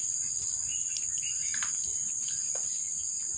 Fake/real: real